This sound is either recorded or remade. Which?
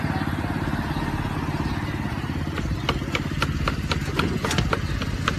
recorded